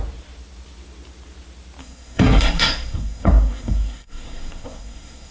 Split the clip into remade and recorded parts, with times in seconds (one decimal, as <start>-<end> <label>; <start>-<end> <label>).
0.0-1.8 recorded; 1.8-5.3 remade